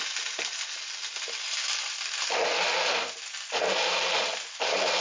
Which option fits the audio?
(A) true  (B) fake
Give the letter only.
A